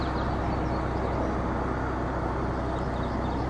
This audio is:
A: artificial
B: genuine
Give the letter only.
B